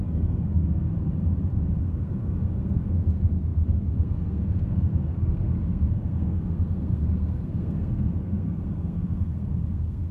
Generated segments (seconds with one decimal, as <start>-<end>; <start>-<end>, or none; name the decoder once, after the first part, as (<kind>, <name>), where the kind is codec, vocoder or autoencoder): 0.0-0.9 (codec, SNAC); 1.8-10.1